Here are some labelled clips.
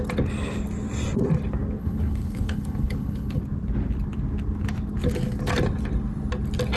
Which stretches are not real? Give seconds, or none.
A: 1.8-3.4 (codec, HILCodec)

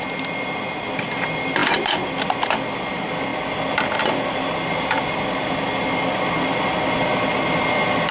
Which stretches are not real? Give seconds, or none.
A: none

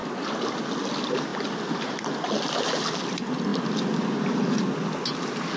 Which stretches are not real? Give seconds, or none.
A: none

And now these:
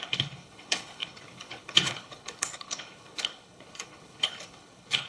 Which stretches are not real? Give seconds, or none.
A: 0.0-5.1 (codec, HILCodec)

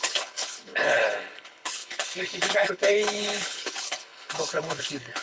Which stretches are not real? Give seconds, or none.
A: 0.0-5.2 (codec, HILCodec)